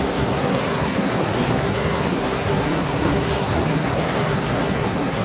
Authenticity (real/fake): fake